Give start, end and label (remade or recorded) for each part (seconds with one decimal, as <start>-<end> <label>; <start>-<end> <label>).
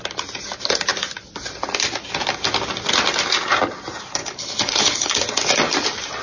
0.0-4.2 recorded; 4.2-5.1 remade; 5.1-6.2 recorded